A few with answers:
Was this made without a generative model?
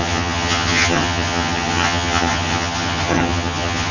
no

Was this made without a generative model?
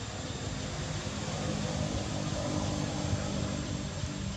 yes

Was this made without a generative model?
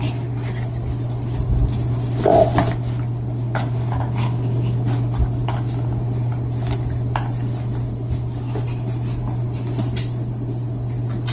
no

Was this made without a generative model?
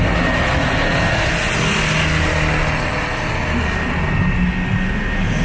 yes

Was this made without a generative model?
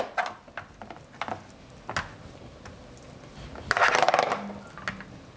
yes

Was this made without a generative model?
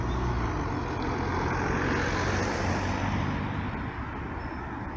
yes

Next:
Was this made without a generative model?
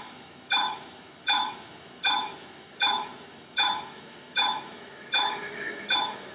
no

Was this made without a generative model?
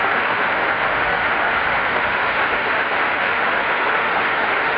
no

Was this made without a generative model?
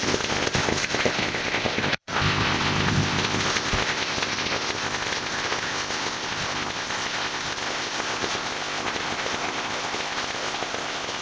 no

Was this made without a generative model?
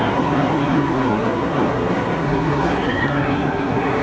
no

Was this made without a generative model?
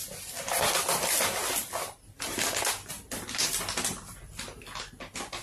yes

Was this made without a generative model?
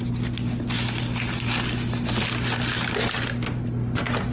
yes